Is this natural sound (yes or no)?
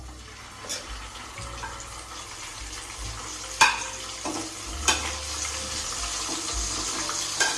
yes